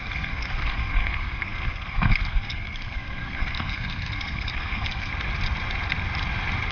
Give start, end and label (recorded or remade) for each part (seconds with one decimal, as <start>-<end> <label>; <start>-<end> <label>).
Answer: 0.0-5.1 remade; 5.1-6.7 recorded